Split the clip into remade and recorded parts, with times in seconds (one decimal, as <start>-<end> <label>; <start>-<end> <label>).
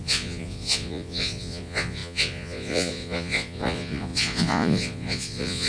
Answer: 0.0-5.7 remade